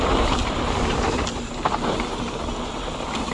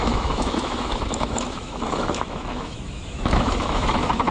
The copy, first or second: second